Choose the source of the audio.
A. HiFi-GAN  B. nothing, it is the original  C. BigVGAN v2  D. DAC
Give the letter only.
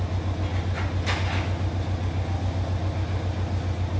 B